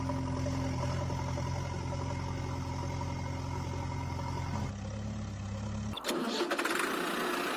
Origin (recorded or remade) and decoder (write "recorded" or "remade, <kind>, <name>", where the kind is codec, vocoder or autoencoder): recorded